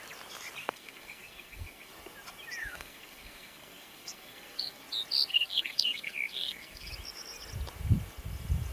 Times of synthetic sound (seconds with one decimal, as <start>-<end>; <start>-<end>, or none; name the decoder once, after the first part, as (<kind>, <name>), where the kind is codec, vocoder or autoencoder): 0.6-1.9 (codec, SNAC); 2.6-4.8; 5.3-6.9